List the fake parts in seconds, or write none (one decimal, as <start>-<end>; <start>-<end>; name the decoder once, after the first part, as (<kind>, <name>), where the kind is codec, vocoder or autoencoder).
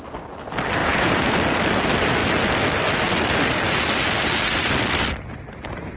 0.8-1.3 (vocoder, Vocos)